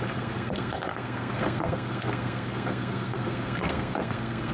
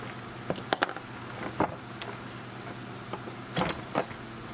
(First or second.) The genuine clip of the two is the second